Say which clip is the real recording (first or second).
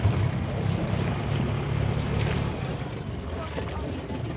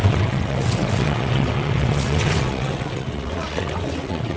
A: first